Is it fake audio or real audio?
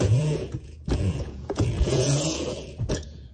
fake